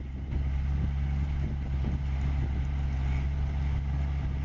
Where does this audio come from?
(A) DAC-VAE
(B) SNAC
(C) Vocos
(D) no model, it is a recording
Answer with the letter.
D